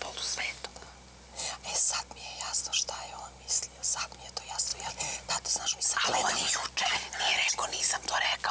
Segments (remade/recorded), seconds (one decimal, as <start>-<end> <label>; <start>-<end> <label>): 0.0-4.7 recorded; 4.7-5.3 remade; 5.3-8.5 recorded